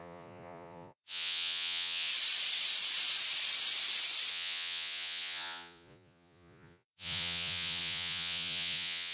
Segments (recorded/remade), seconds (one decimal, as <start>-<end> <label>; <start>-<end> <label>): 0.0-2.1 remade; 2.1-4.3 recorded; 4.3-9.1 remade

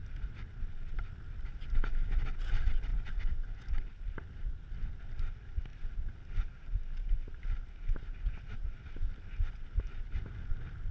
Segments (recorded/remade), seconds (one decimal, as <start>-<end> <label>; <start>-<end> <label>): 0.0-10.9 recorded

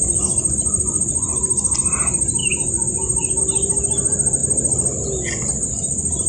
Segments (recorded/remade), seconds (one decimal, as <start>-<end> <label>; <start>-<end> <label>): 0.0-1.4 remade; 1.4-2.4 recorded; 2.4-3.4 remade; 3.4-6.3 recorded

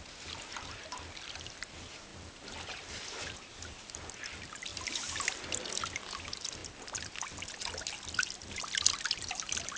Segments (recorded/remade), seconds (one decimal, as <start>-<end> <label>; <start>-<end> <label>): 0.0-9.8 recorded

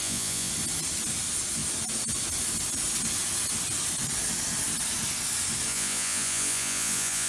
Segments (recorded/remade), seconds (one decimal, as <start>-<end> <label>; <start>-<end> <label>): 0.0-0.5 remade; 0.5-5.7 recorded; 5.7-7.3 remade

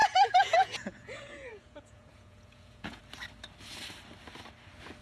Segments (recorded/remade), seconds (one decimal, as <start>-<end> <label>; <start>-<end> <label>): 0.0-3.0 remade; 3.0-5.0 recorded

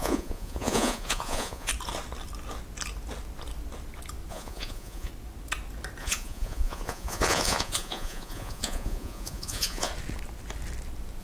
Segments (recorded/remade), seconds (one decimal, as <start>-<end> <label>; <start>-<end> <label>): 0.0-1.7 remade; 1.7-4.3 recorded; 4.3-5.1 remade; 5.1-6.0 recorded; 6.0-9.9 remade; 9.9-11.2 recorded

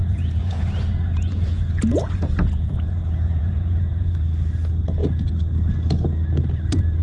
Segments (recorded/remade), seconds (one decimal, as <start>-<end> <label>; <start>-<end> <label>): 0.0-4.2 remade; 4.2-7.0 recorded